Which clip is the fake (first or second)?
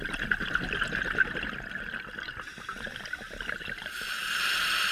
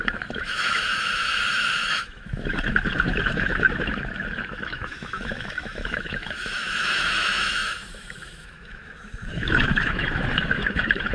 second